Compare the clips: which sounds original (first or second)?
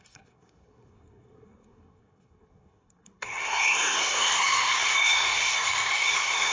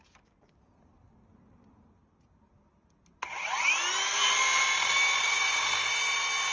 second